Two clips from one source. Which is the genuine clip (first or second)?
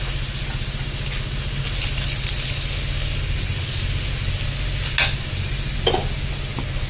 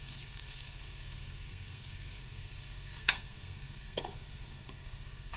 first